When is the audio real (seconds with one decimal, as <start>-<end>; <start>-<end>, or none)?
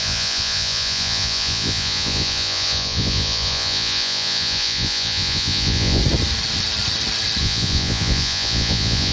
6.0-7.4